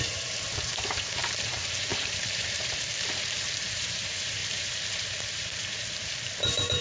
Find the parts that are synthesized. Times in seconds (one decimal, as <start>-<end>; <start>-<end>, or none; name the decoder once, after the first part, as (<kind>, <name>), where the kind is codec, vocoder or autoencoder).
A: 0.0-6.8 (vocoder, BigVGAN v2)